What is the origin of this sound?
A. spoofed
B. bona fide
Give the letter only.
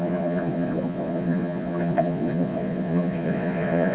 A